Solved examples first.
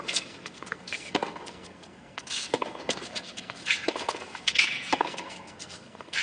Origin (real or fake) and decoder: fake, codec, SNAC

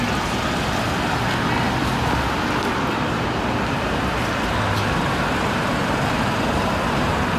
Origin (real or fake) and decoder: real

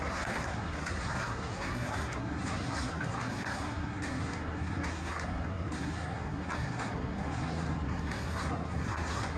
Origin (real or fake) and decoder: fake, codec, SNAC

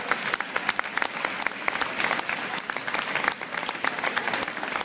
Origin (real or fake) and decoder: real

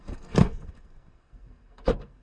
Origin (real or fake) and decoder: fake, codec, SNAC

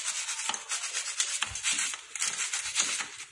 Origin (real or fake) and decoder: real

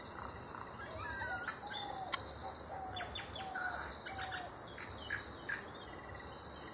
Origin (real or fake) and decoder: real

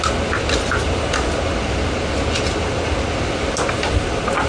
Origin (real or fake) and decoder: real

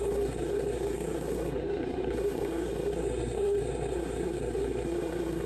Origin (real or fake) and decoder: fake, codec, SNAC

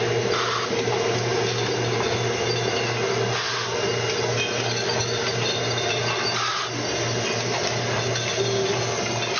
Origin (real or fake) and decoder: real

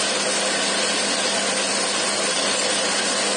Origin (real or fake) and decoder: real